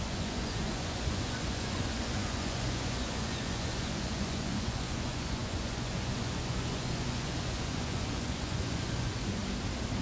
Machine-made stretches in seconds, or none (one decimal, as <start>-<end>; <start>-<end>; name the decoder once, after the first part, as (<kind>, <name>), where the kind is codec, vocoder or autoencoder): 0.0-9.4 (vocoder, Vocos)